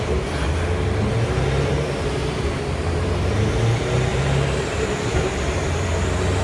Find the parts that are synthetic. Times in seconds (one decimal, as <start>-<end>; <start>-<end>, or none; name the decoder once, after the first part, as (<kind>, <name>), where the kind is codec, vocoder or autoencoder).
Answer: 2.2-3.3 (vocoder, BigVGAN v2); 4.1-5.9